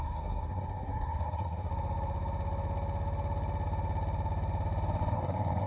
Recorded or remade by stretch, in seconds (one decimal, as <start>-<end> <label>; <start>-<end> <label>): 0.0-1.7 remade; 1.7-5.1 recorded; 5.1-5.7 remade